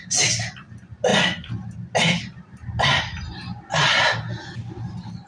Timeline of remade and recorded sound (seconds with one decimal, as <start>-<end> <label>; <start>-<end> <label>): 0.0-5.3 recorded